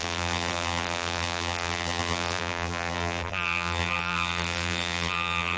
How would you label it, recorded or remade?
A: remade